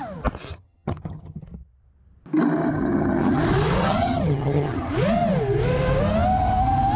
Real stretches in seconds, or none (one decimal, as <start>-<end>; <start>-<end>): 0.0-0.5; 1.4-2.7; 3.4-3.8; 4.9-7.0